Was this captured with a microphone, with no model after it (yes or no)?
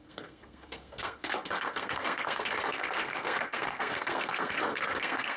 no